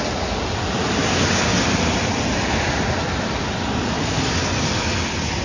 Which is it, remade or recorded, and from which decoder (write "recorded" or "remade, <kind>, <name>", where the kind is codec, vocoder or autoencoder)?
recorded